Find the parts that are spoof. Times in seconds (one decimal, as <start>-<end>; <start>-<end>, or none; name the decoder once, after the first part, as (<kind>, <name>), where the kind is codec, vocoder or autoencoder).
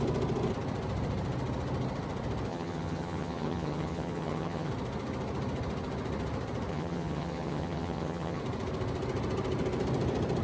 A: 2.5-4.7 (vocoder, HiFi-GAN); 6.7-8.4